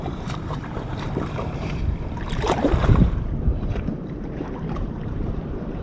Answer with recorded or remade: remade